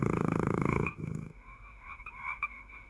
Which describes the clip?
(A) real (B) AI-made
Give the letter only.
B